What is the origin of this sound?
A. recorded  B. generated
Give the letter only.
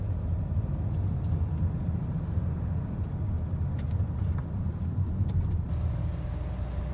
A